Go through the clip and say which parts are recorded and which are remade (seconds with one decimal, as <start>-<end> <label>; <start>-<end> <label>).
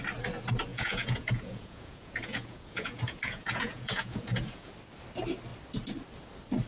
0.0-0.7 recorded; 0.7-4.7 remade; 4.7-6.7 recorded